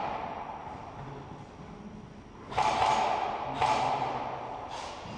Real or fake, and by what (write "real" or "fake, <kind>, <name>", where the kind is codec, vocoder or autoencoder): real